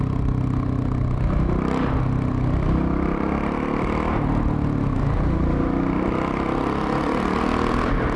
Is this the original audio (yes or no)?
yes